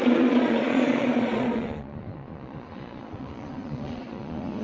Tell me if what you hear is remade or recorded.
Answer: remade